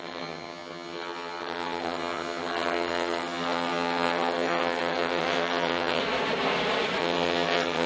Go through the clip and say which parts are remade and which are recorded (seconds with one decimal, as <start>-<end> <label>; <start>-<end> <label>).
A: 0.0-6.0 remade; 6.0-7.0 recorded; 7.0-7.9 remade